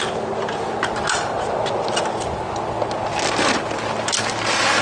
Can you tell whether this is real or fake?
real